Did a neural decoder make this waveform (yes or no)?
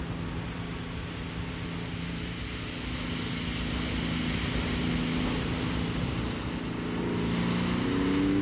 no